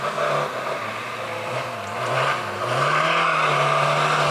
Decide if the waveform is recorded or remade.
recorded